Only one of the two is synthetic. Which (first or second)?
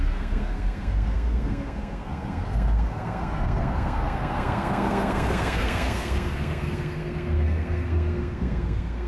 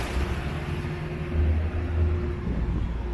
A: first